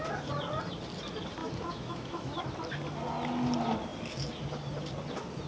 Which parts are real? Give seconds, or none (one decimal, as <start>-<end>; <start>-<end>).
0.0-1.4; 2.4-5.5